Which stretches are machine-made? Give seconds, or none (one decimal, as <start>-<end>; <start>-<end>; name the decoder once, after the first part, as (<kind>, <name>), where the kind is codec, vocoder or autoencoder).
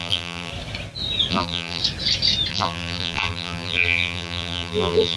0.0-0.5 (vocoder, BigVGAN v2); 1.3-1.8; 2.5-5.2